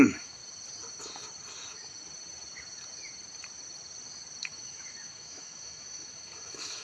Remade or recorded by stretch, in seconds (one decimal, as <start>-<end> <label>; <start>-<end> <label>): 0.0-0.4 remade; 0.4-4.5 recorded; 4.5-6.8 remade